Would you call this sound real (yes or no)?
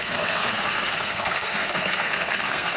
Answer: no